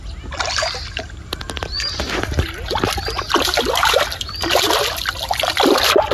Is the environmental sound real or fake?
real